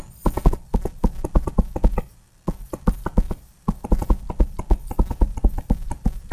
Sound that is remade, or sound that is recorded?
recorded